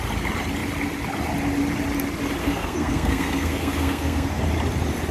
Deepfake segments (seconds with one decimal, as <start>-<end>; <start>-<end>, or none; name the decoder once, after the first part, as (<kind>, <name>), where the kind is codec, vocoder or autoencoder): 2.4-4.4 (codec, SNAC)